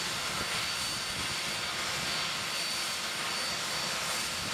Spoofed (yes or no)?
no